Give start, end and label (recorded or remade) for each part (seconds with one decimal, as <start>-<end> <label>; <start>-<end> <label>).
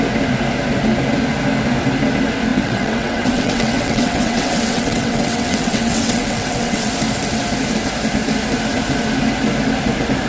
0.0-2.5 recorded; 2.5-6.9 remade; 6.9-10.3 recorded